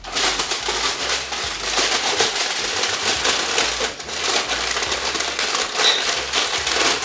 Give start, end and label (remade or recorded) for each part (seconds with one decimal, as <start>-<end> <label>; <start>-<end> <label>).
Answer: 0.0-7.0 recorded